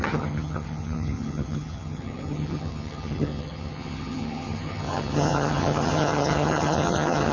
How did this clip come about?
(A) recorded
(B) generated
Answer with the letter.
B